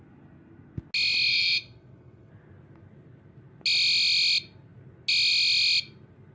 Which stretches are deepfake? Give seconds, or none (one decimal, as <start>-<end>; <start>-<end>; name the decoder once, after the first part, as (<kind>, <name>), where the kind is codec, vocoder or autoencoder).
1.3-2.3 (vocoder, WaveNeXt)